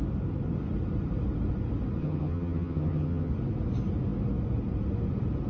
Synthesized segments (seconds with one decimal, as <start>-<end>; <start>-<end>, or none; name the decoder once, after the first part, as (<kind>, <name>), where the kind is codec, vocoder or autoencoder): 2.0-3.3 (vocoder, HiFi-GAN)